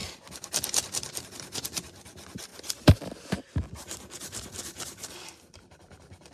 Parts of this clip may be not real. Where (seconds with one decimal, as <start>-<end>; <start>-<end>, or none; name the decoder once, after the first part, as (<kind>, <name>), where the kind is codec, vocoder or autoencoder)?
0.0-2.5 (vocoder, BigVGAN v2); 3.7-6.3